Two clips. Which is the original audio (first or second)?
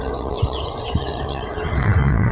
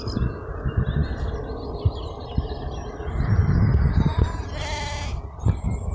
second